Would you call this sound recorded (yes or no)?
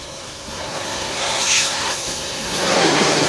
no